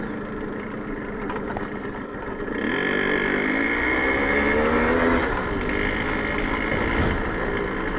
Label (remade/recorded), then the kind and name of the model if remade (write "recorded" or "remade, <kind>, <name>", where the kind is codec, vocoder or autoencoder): recorded